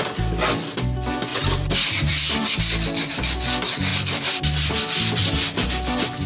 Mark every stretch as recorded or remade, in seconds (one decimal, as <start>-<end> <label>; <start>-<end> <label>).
0.0-1.3 recorded; 1.3-2.5 remade; 2.5-3.9 recorded; 3.9-4.8 remade; 4.8-6.3 recorded